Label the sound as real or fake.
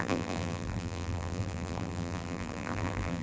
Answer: fake